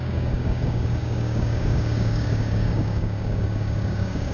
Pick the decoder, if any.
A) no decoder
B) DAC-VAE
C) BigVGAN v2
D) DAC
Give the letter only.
D